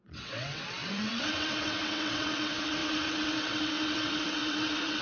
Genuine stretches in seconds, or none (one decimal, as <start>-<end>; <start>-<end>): none